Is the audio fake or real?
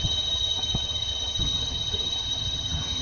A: fake